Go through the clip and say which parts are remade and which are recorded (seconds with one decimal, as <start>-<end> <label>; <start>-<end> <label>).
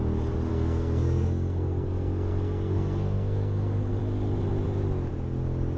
0.0-0.5 recorded; 0.5-4.0 remade; 4.0-5.8 recorded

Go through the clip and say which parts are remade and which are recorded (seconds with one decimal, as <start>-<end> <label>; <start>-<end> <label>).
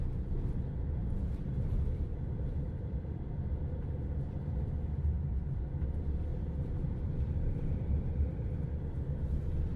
0.0-1.0 recorded; 1.0-5.6 remade; 5.6-6.3 recorded; 6.3-8.5 remade; 8.5-9.8 recorded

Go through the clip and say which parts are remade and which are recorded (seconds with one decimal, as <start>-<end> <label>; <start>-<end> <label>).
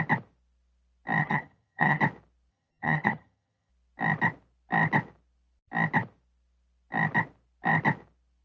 0.0-1.2 recorded; 1.2-2.0 remade; 2.0-2.5 recorded; 2.5-3.7 remade; 3.7-8.4 recorded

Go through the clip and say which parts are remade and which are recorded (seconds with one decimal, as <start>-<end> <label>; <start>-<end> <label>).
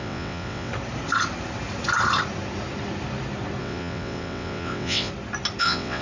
0.0-0.7 remade; 0.7-3.6 recorded; 3.6-5.1 remade; 5.1-5.6 recorded; 5.6-6.0 remade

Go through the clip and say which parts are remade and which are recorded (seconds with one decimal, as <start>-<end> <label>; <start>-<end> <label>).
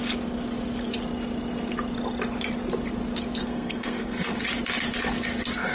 0.0-3.4 recorded; 3.4-4.4 remade; 4.4-5.7 recorded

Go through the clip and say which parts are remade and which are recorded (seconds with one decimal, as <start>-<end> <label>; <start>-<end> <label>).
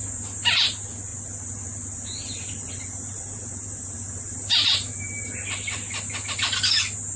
0.0-1.1 recorded; 1.1-5.3 remade; 5.3-7.2 recorded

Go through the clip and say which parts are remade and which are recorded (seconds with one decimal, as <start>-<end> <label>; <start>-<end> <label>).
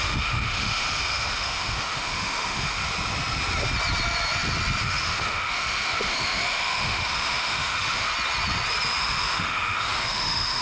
0.0-2.8 remade; 2.8-4.8 recorded; 4.8-8.1 remade; 8.1-9.0 recorded; 9.0-10.6 remade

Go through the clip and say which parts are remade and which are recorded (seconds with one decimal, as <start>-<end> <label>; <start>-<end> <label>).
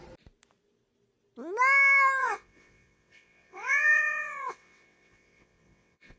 0.0-2.2 recorded; 2.2-6.2 remade